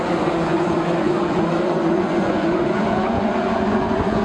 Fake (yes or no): yes